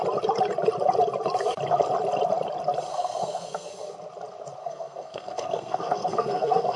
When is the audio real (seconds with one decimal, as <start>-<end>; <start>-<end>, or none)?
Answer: 0.0-2.9; 3.7-4.6